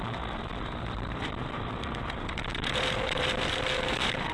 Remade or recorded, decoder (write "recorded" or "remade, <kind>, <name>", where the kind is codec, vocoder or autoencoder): remade, vocoder, BigVGAN v2